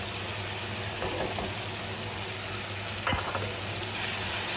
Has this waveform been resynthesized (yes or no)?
no